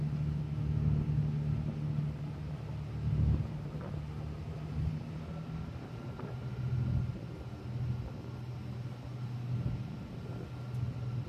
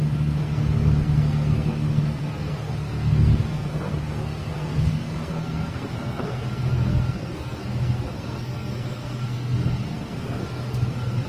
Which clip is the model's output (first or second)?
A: second